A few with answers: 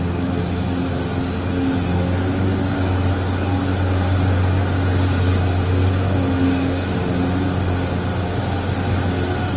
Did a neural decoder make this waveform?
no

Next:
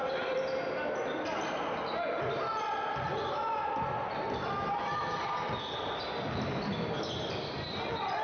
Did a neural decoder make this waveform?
no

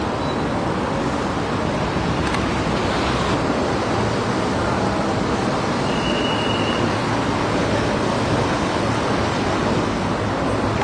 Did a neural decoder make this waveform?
no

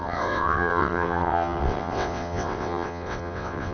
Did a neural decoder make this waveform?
yes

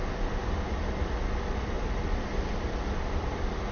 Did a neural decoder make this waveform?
no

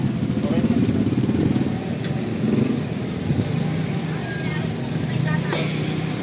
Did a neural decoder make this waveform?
no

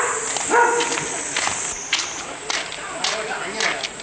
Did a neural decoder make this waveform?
no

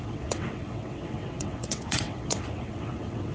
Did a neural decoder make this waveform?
yes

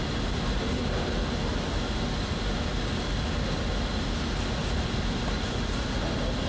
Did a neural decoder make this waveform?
no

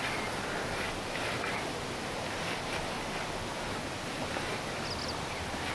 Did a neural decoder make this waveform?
no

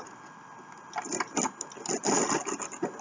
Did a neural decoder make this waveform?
no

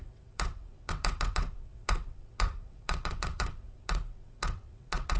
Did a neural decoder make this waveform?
yes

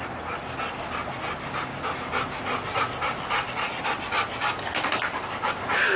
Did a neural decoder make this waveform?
no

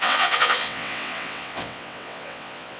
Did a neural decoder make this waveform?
yes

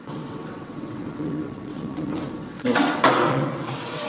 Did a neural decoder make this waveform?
yes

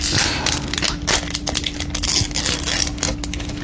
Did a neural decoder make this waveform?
no